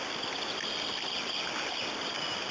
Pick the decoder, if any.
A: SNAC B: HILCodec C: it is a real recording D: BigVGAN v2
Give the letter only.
C